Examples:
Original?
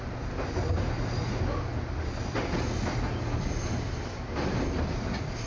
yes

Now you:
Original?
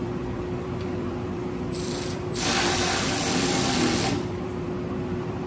no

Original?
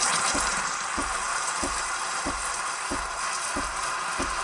yes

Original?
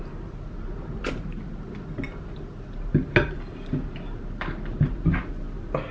yes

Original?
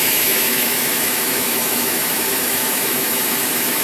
no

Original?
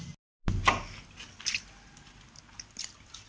yes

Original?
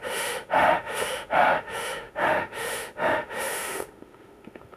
no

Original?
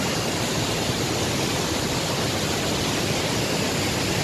yes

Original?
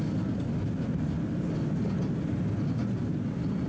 yes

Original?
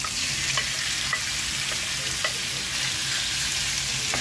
yes